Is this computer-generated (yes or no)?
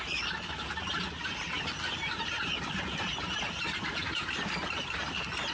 no